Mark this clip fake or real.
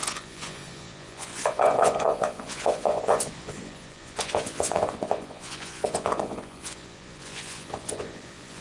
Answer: fake